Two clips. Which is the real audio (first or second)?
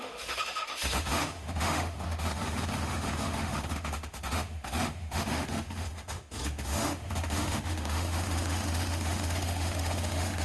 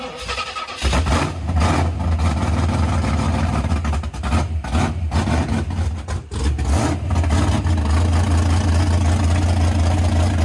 second